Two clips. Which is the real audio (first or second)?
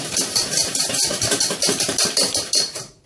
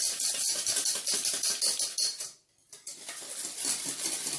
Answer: second